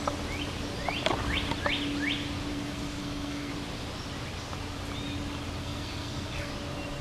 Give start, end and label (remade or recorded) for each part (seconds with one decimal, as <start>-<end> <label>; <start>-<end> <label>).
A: 0.0-2.5 recorded; 2.5-3.5 remade; 3.5-5.6 recorded; 5.6-6.5 remade; 6.5-7.0 recorded